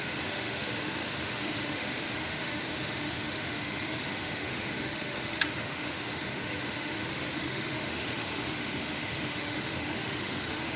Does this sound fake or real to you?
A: fake